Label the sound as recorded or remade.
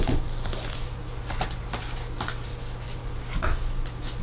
recorded